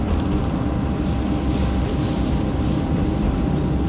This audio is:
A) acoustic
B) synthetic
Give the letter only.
A